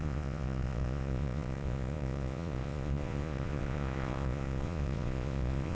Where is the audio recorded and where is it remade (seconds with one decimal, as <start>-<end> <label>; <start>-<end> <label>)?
0.0-5.7 remade